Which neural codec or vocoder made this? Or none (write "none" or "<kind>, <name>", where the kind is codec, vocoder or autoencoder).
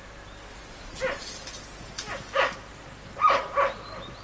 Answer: none